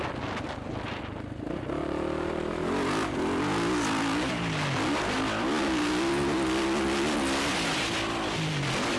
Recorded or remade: recorded